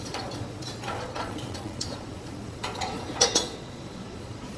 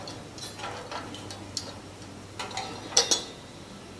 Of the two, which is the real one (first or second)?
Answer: second